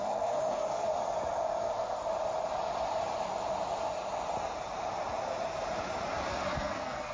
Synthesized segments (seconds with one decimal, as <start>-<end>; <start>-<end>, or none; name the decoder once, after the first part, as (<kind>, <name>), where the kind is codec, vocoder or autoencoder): 0.0-0.9 (codec, SNAC); 1.6-2.0; 6.3-7.1